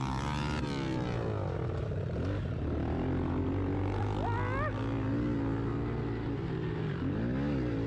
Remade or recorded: recorded